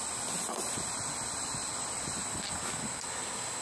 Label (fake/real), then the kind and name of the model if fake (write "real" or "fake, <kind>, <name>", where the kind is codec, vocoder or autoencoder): real